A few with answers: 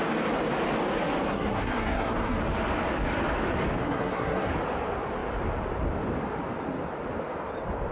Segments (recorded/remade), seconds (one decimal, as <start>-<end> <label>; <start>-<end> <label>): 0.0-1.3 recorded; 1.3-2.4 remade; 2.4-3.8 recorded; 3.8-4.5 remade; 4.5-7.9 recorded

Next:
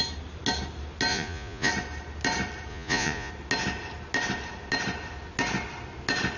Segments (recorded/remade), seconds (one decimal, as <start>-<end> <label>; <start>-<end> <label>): 0.0-1.1 recorded; 1.1-1.7 remade; 1.7-2.7 recorded; 2.7-3.3 remade; 3.3-6.4 recorded

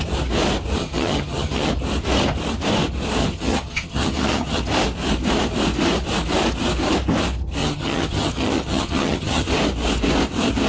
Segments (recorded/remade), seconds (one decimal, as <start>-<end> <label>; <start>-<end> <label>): 0.0-0.8 recorded; 0.8-1.7 remade; 1.7-3.2 recorded; 3.2-4.6 remade; 4.6-7.6 recorded; 7.6-9.5 remade; 9.5-10.7 recorded

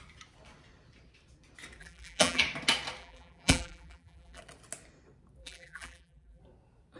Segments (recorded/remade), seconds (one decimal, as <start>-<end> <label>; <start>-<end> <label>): 0.0-1.8 recorded; 1.8-2.4 remade; 2.4-3.0 recorded; 3.0-4.4 remade; 4.4-5.4 recorded; 5.4-6.4 remade; 6.4-7.0 recorded

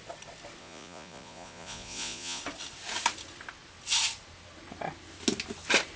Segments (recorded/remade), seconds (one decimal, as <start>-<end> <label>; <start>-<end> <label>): 0.0-0.6 recorded; 0.6-2.4 remade; 2.4-6.0 recorded

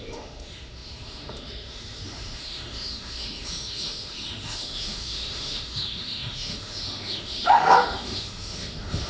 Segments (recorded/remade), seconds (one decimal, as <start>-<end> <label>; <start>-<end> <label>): 0.0-9.1 remade

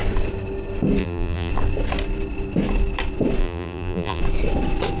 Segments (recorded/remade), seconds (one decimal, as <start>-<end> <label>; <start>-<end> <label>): 0.0-1.0 recorded; 1.0-1.5 remade; 1.5-3.4 recorded; 3.4-4.2 remade; 4.2-5.0 recorded